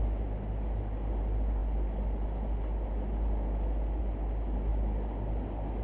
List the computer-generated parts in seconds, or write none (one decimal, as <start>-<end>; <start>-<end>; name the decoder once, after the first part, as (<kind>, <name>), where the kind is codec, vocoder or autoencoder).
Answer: none